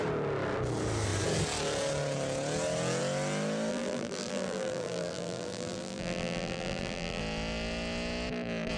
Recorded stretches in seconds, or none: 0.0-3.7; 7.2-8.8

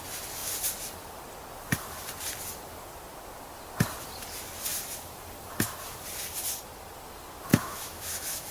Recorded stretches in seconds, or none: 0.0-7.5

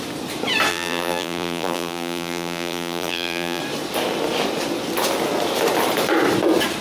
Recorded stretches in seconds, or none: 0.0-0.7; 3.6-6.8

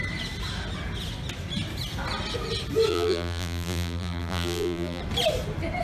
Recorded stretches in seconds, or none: 0.0-2.9; 5.0-5.8

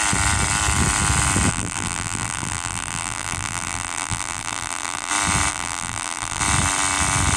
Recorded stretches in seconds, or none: 0.0-1.5; 5.1-5.5; 6.4-7.4

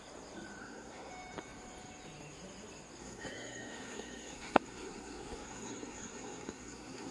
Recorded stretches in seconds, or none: 0.0-0.6; 1.1-3.0